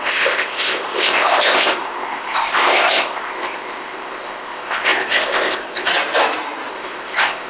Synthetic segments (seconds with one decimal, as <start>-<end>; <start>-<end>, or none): 0.0-5.9; 6.7-7.5